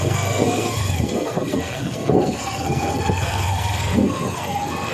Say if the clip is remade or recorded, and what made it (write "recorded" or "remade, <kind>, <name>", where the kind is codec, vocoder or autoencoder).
remade, codec, SNAC